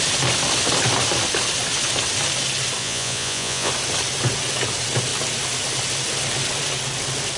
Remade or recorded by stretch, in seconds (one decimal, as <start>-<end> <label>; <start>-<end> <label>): 0.0-2.8 recorded; 2.8-3.7 remade; 3.7-7.4 recorded

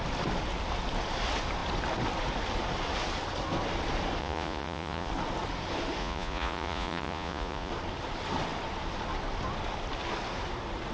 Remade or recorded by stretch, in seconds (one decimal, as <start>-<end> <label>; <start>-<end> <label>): 0.0-4.2 recorded; 4.2-5.1 remade; 5.1-6.0 recorded; 6.0-7.7 remade; 7.7-10.9 recorded

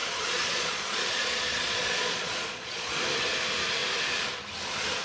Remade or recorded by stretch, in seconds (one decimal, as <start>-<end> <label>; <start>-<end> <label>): 0.0-3.0 remade; 3.0-5.0 recorded